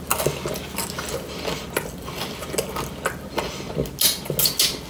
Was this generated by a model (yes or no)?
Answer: no